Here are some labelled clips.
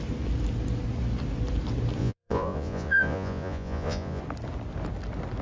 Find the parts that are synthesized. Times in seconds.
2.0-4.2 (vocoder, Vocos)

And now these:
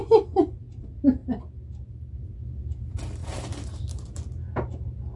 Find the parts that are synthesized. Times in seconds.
3.2-4.4 (vocoder, BigVGAN v2)

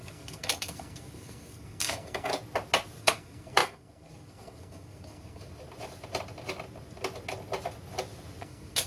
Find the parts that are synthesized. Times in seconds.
0.0-2.3 (codec, SNAC); 3.0-5.5; 8.4-8.9